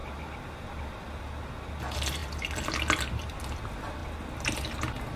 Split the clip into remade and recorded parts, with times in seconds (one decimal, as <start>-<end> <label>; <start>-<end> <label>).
0.0-5.2 recorded